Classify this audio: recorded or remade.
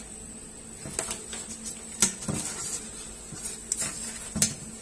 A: recorded